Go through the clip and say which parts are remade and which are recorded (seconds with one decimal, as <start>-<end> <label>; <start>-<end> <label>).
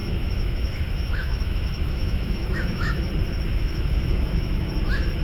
0.0-3.1 remade; 3.1-3.5 recorded; 3.5-4.7 remade; 4.7-5.2 recorded